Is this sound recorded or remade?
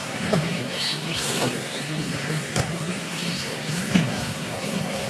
remade